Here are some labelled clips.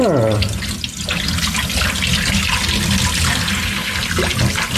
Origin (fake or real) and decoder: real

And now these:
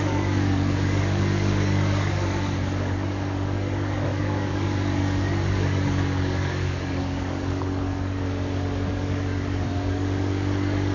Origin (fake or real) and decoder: fake, codec, DAC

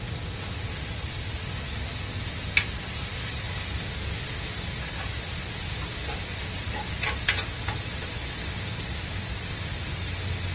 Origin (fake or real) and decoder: real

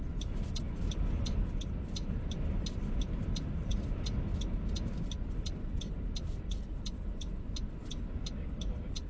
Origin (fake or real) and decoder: real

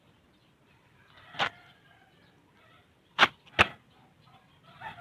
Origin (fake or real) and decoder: real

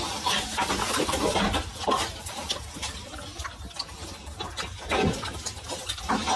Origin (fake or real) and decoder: fake, vocoder, BigVGAN v2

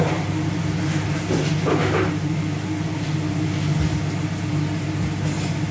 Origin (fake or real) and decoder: real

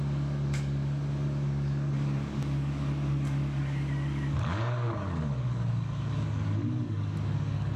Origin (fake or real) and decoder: fake, codec, DAC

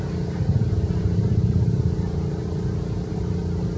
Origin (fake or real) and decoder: real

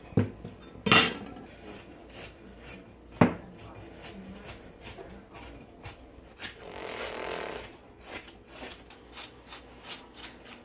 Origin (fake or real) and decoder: real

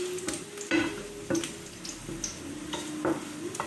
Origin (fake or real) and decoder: real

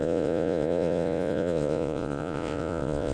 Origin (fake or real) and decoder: fake, vocoder, Vocos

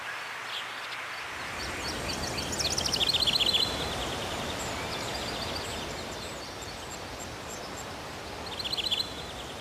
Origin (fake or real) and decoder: real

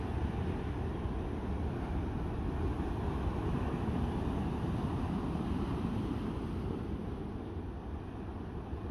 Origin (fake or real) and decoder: real